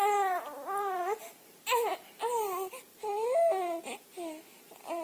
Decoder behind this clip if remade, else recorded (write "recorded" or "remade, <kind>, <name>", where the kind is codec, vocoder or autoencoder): remade, vocoder, BigVGAN v2